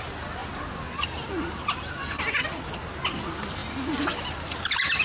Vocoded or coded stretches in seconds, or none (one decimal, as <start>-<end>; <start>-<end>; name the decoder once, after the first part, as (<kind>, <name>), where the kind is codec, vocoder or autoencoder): none